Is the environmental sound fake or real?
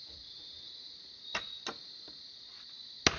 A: real